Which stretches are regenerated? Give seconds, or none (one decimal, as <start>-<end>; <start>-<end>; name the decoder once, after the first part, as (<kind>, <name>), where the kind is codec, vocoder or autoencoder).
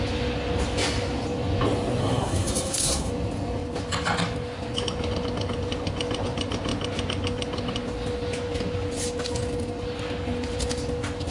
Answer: 2.0-3.1 (codec, SNAC)